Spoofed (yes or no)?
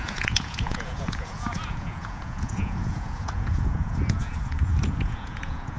yes